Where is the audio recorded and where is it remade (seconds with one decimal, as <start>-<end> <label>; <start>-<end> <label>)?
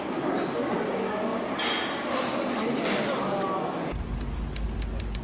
0.0-1.3 recorded; 1.3-2.9 remade; 2.9-5.2 recorded